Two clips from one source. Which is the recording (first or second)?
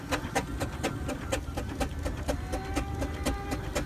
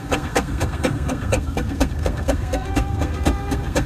first